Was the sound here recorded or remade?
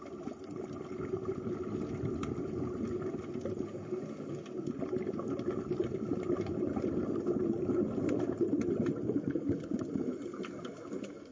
recorded